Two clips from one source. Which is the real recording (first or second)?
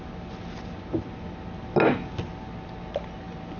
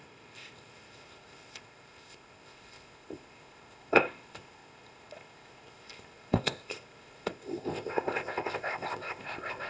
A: first